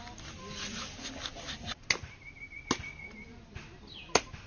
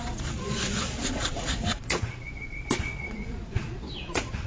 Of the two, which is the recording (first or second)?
first